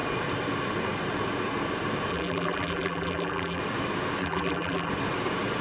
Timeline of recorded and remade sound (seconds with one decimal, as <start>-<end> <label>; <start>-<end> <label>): 0.0-2.1 recorded; 2.1-3.6 remade; 3.6-4.2 recorded; 4.2-4.9 remade; 4.9-5.6 recorded